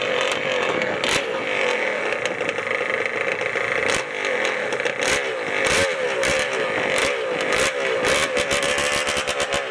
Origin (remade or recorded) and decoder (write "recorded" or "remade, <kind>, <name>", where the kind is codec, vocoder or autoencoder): recorded